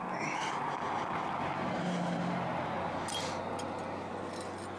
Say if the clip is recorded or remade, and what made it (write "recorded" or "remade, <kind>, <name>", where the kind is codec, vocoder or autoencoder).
recorded